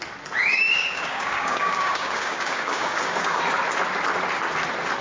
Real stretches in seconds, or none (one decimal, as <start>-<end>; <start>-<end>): 0.0-0.4; 3.4-5.0